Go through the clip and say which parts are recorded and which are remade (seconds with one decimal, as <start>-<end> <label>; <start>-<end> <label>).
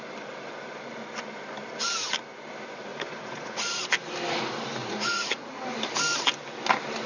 0.0-2.9 recorded; 2.9-3.8 remade; 3.8-4.8 recorded; 4.8-5.6 remade; 5.6-7.1 recorded